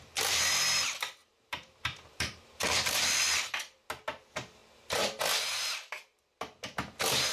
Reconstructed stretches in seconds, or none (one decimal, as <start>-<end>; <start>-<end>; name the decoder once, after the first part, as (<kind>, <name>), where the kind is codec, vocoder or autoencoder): 1.2-3.0 (vocoder, BigVGAN v2)